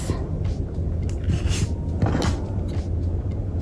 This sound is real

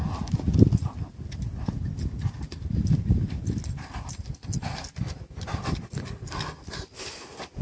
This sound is real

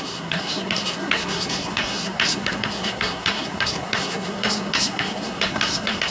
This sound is fake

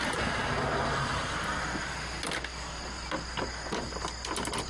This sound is real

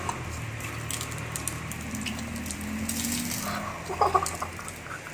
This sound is real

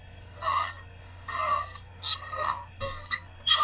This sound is fake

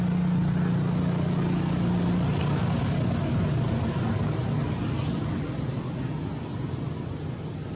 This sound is real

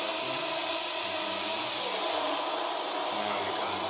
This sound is real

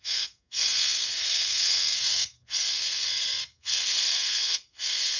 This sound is fake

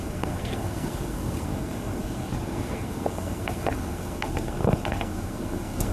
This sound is fake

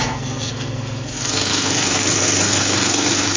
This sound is fake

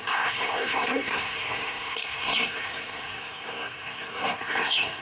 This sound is fake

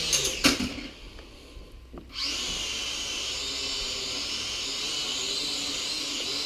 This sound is real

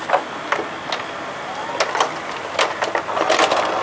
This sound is real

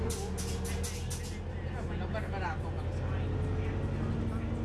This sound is real